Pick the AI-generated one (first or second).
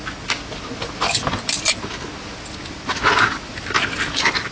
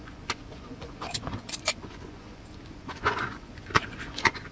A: second